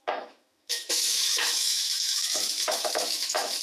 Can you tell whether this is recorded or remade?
remade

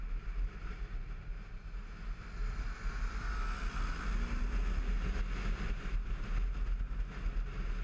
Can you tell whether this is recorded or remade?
recorded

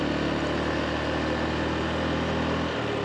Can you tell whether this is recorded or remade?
recorded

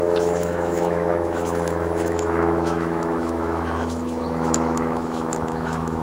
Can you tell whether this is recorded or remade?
remade